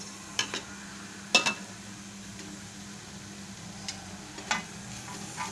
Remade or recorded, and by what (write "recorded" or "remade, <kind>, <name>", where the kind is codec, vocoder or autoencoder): recorded